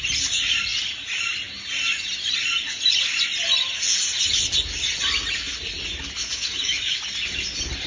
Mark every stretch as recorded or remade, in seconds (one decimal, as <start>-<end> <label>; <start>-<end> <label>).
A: 0.0-6.2 recorded; 6.2-7.0 remade; 7.0-7.9 recorded